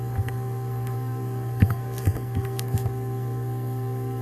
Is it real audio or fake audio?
fake